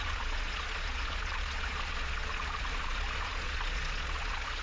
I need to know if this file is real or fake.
fake